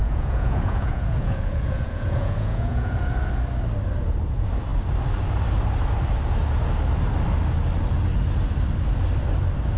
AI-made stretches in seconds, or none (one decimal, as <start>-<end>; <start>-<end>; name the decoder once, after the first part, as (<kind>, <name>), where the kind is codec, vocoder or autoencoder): 0.0-3.1 (vocoder, Vocos)